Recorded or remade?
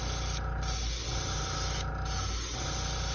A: recorded